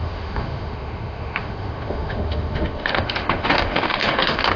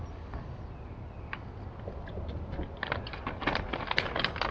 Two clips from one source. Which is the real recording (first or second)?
second